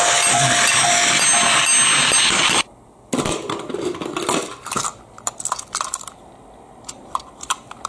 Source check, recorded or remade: recorded